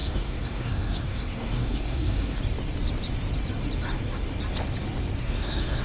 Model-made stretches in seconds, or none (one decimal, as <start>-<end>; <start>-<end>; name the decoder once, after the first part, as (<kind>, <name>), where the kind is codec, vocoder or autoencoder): 0.0-2.4 (codec, SNAC); 5.2-5.8